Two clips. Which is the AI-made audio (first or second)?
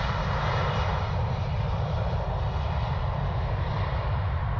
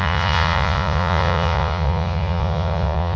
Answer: second